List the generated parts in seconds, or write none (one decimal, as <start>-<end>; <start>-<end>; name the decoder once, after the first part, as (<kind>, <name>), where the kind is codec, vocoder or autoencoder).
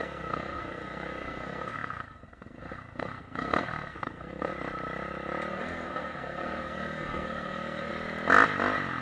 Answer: 0.0-4.5 (codec, SNAC); 5.5-7.9